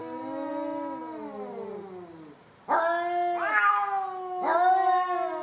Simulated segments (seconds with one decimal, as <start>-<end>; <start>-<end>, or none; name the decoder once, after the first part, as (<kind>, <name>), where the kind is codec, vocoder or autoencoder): none